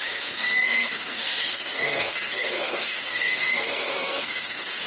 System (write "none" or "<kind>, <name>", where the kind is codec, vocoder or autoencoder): codec, SNAC